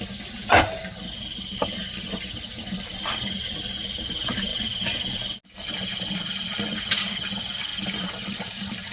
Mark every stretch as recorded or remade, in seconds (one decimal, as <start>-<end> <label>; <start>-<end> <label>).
0.0-8.9 recorded